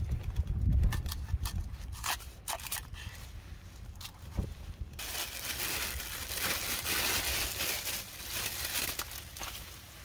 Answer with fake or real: real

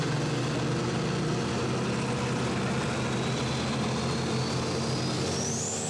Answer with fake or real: real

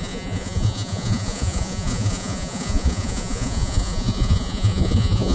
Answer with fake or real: fake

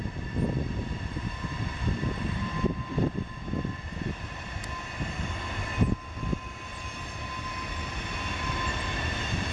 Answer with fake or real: real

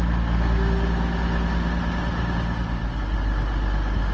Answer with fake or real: real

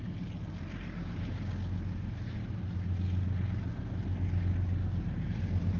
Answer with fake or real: real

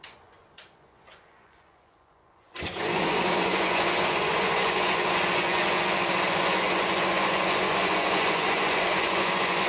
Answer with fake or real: fake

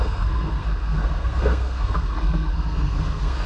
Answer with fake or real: fake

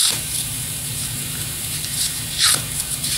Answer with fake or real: fake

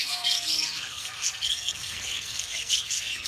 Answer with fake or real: fake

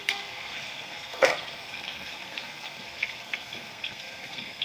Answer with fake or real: fake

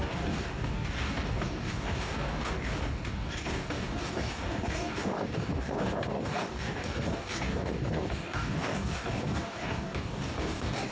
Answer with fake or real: fake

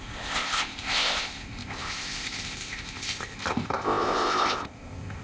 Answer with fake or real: fake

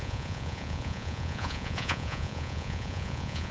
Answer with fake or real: fake